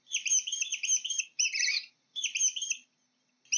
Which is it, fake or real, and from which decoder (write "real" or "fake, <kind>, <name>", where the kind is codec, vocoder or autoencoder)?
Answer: real